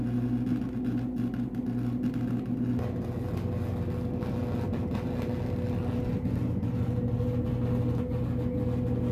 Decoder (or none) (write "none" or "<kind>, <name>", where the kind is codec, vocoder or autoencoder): none